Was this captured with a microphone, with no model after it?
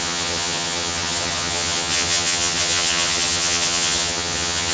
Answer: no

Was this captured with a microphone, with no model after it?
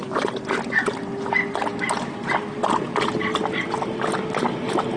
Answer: yes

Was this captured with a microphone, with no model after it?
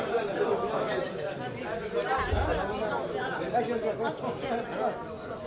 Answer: yes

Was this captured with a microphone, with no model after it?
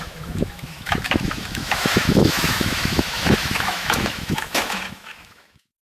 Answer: no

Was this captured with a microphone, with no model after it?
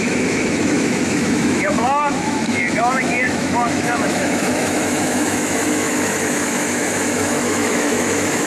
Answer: no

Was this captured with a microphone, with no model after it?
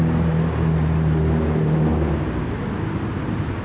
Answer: yes